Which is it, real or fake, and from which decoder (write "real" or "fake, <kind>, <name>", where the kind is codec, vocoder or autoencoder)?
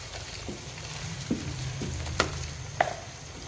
fake, vocoder, BigVGAN v2